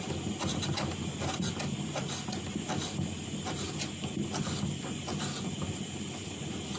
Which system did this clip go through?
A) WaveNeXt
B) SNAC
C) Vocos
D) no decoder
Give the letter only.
D